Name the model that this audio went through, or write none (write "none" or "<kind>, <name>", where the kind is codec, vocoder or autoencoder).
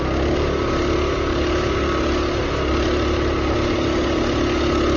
none